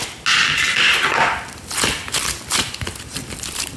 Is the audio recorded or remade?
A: recorded